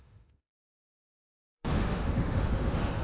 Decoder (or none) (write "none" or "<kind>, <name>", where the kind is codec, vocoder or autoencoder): autoencoder, DAC-VAE